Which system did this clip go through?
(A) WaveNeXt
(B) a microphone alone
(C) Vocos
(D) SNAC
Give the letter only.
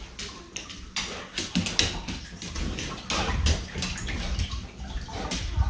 B